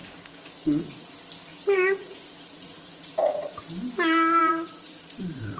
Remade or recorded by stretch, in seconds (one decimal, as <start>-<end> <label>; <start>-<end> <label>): 0.0-1.1 remade; 1.1-1.5 recorded; 1.5-3.6 remade; 3.6-4.4 recorded; 4.4-5.6 remade